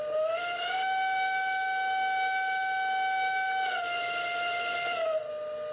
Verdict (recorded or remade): recorded